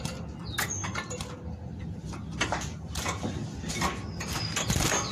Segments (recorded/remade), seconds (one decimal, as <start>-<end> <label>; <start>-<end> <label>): 0.0-5.1 recorded